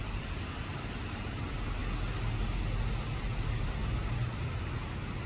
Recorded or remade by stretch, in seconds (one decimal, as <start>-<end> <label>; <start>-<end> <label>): 0.0-1.8 remade; 1.8-3.2 recorded; 3.2-3.8 remade; 3.8-4.8 recorded; 4.8-5.3 remade